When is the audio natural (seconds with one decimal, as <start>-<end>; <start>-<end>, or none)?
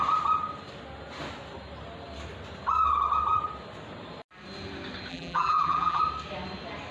0.0-5.1; 6.0-6.9